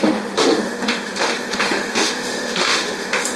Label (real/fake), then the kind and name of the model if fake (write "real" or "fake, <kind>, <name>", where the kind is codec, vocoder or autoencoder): fake, autoencoder, DAC-VAE